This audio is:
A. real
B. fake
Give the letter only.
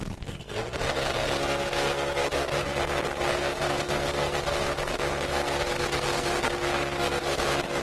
B